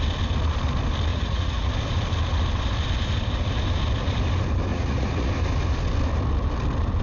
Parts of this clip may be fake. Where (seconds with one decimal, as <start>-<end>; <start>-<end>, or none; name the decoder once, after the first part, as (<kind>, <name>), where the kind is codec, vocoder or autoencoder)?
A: 1.1-1.7 (vocoder, Vocos); 4.7-5.3